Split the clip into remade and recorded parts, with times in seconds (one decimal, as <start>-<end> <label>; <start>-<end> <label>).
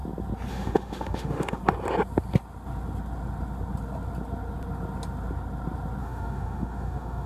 0.0-0.5 recorded; 0.5-1.6 remade; 1.6-6.0 recorded; 6.0-7.3 remade